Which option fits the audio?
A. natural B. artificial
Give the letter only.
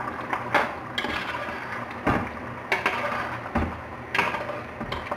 A